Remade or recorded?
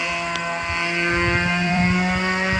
remade